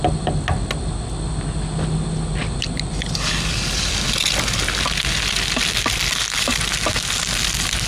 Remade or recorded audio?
recorded